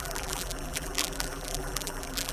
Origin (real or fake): fake